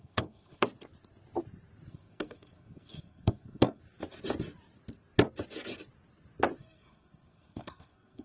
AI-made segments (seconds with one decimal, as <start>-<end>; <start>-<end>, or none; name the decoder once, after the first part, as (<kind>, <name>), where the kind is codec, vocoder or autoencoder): 0.0-0.6 (codec, SNAC); 1.9-3.8; 6.6-8.2